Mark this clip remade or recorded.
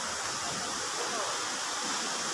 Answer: recorded